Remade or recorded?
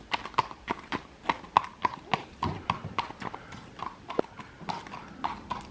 recorded